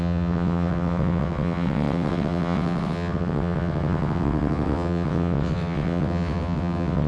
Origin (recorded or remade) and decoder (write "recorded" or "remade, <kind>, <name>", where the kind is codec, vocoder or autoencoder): remade, vocoder, WaveNeXt